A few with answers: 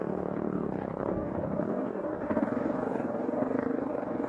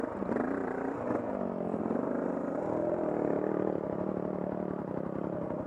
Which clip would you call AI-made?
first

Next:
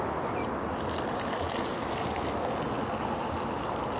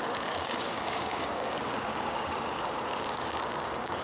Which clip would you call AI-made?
second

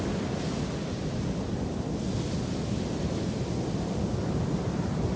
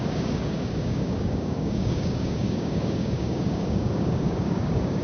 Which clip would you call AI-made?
second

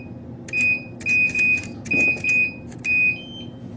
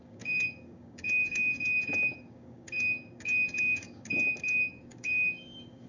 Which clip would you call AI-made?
second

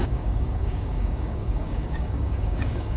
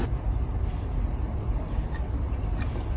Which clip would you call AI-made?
first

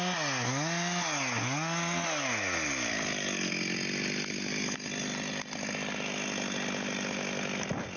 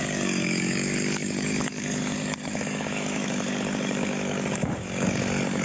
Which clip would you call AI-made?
second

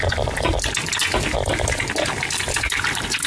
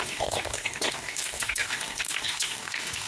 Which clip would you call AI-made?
second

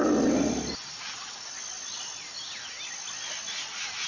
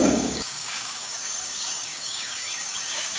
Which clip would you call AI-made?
second